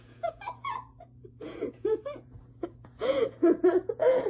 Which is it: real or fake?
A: fake